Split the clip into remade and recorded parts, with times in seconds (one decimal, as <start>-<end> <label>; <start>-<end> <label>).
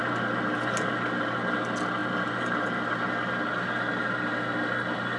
0.0-5.2 recorded